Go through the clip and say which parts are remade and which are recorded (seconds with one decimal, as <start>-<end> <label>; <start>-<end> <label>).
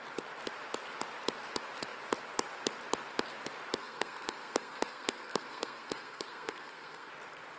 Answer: 0.0-3.8 recorded; 3.8-7.1 remade; 7.1-7.6 recorded